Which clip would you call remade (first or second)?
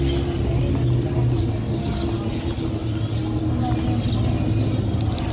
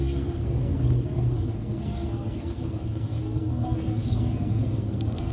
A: second